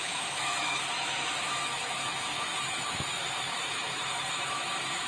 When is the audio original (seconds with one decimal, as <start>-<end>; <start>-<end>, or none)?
none